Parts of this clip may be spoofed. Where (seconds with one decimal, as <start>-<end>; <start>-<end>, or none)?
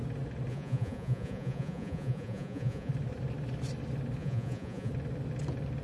0.5-2.9; 4.2-4.9